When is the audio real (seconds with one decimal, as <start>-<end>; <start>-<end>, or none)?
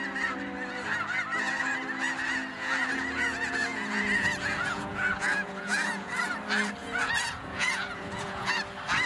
0.0-2.5; 6.1-6.8; 8.6-9.1